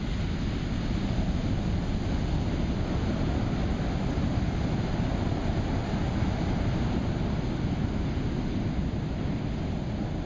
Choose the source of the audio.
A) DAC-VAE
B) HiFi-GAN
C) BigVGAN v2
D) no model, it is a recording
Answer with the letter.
D